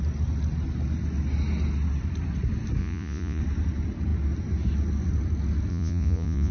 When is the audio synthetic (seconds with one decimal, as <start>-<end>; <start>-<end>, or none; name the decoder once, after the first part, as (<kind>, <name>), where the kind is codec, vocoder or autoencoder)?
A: 2.8-3.4 (vocoder, Vocos); 5.7-6.5